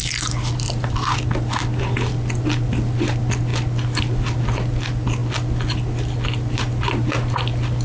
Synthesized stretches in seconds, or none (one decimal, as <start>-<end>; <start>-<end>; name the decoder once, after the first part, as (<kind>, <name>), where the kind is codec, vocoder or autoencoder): none